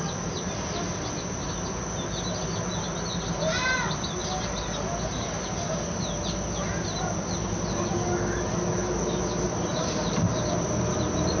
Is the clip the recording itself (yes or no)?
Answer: yes